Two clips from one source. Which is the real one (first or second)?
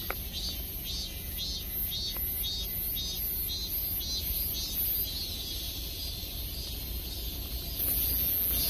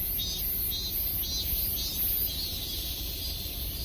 first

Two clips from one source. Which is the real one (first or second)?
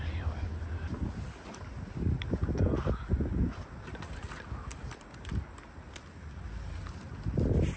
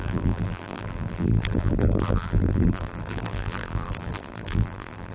first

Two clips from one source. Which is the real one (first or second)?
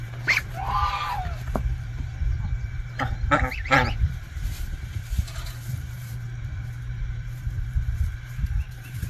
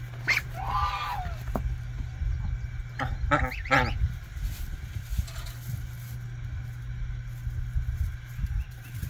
second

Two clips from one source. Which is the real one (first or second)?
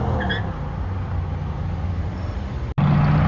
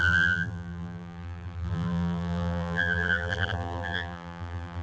first